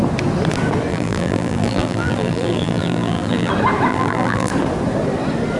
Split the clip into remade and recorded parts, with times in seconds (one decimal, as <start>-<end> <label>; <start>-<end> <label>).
0.0-0.9 recorded; 0.9-3.5 remade; 3.5-3.9 recorded; 3.9-4.5 remade; 4.5-5.6 recorded